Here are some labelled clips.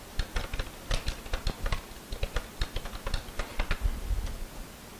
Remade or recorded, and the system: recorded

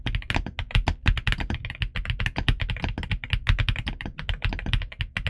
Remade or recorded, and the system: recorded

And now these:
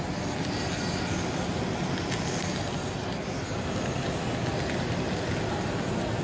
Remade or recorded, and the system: recorded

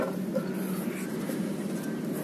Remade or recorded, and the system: recorded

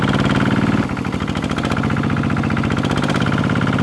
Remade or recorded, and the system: recorded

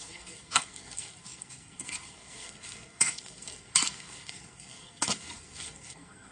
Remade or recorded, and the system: remade, codec, SNAC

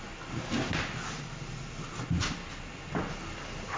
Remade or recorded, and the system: recorded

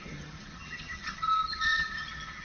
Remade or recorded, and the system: remade, vocoder, HiFi-GAN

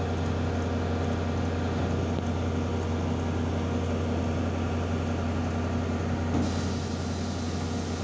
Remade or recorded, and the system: recorded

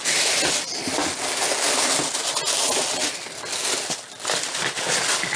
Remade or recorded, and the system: recorded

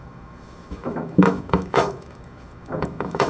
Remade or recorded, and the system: remade, autoencoder, DAC-VAE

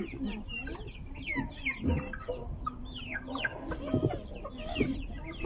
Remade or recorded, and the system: recorded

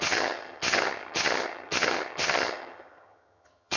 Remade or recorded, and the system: remade, vocoder, HiFi-GAN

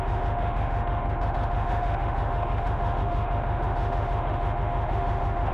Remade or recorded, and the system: remade, autoencoder, DAC-VAE